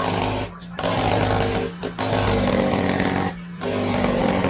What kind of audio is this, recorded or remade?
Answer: recorded